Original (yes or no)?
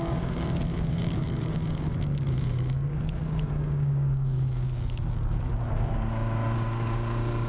no